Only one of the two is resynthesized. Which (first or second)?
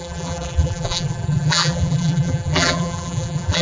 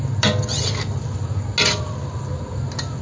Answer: first